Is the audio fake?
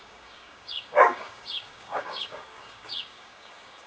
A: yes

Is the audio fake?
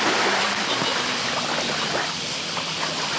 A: no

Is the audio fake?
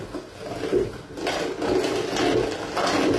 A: no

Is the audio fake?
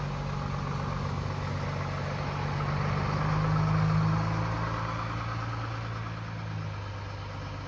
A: no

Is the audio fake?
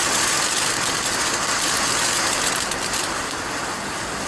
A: no